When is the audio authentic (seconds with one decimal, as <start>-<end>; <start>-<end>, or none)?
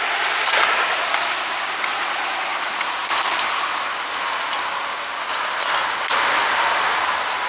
0.0-2.5; 4.3-7.5